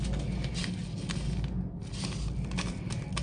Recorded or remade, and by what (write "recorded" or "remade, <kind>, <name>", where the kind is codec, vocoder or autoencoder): recorded